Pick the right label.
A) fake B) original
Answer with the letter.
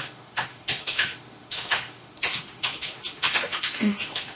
A